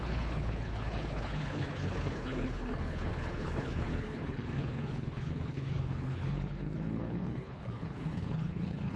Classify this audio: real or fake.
fake